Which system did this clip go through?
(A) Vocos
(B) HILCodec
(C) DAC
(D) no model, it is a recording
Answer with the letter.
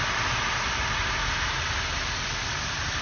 D